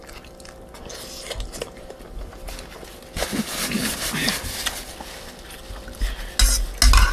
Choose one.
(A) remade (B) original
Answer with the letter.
B